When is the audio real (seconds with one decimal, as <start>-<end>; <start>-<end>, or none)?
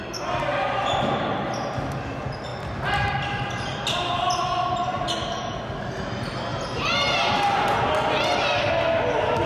0.0-0.5; 1.8-9.5